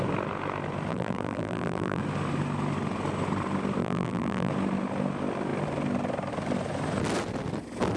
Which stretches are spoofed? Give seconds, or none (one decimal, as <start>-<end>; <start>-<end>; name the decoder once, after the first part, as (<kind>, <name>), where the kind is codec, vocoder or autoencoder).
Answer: 0.9-2.0 (vocoder, BigVGAN v2); 3.8-4.5